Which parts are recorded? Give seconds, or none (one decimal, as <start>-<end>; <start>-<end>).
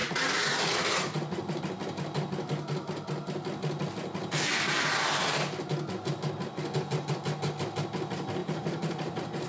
1.6-8.4